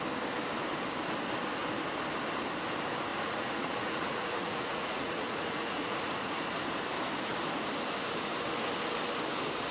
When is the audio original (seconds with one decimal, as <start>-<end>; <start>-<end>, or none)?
0.0-3.1; 6.4-9.7